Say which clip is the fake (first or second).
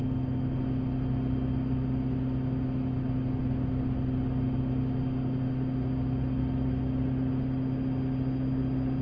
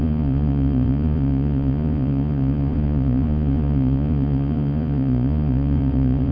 second